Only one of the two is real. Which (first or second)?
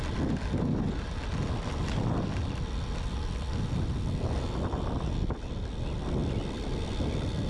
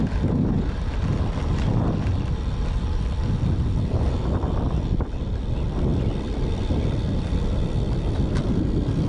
first